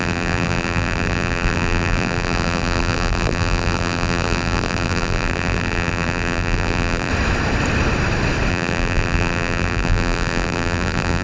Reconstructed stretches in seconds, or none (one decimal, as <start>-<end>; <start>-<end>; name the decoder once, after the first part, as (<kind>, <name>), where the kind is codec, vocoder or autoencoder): 0.0-7.1 (vocoder, BigVGAN v2); 8.5-11.2